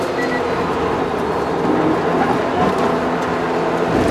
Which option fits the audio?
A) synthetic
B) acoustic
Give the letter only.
B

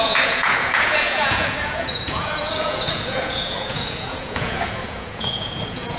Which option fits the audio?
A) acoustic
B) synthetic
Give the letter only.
B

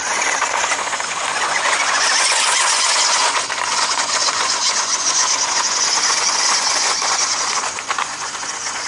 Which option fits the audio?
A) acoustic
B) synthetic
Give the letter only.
B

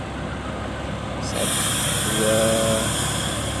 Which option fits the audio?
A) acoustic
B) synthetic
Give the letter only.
A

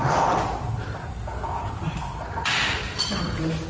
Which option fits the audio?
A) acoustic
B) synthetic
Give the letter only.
A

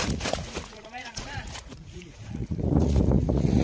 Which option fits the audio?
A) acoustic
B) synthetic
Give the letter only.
B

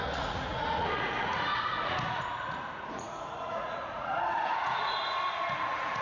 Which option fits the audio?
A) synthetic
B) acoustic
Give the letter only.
A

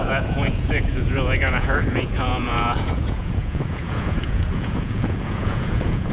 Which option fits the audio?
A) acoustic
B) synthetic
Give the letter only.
B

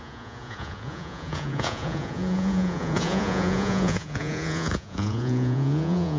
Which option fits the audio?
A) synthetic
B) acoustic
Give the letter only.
A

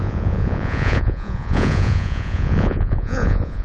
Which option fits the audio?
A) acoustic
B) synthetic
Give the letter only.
B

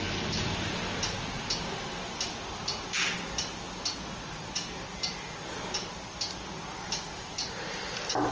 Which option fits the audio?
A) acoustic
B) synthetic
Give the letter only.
A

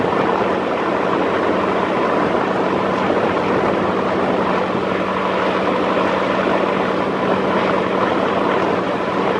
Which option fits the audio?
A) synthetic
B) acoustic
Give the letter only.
B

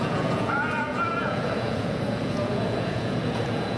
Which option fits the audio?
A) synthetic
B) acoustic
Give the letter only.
A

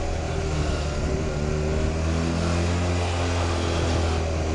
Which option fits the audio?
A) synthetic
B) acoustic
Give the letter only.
B